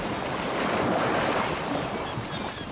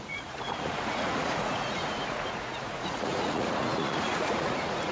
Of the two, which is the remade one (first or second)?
second